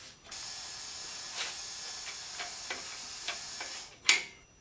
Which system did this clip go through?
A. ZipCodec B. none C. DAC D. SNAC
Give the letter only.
B